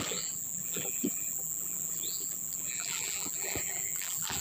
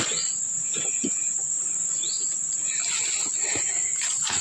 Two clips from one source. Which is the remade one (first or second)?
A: first